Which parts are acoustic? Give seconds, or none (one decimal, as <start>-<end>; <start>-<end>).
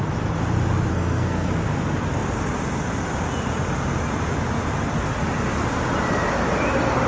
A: 0.0-0.9; 1.5-7.1